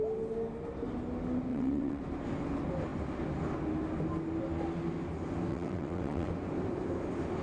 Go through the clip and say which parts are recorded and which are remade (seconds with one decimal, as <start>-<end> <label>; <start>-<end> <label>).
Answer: 0.0-1.5 recorded; 1.5-2.0 remade; 2.0-5.5 recorded; 5.5-6.3 remade; 6.3-7.4 recorded